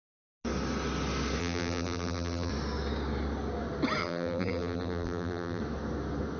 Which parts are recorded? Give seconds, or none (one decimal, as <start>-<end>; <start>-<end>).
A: 0.0-1.4; 2.5-4.0; 5.6-6.4